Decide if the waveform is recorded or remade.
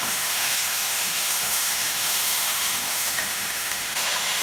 remade